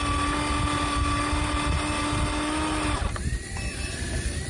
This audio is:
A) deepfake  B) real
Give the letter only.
B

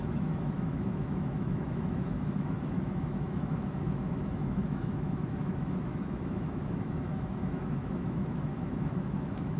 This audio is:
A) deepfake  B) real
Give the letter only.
A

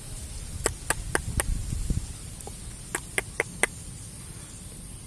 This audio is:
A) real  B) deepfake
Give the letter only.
A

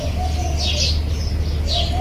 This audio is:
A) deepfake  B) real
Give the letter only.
B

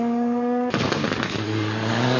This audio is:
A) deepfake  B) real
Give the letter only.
A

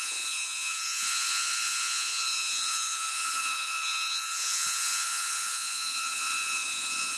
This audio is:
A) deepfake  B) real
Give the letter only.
A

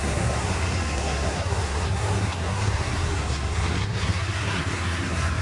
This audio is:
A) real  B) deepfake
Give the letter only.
B